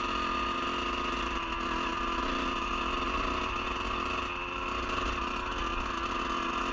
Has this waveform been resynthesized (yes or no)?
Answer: no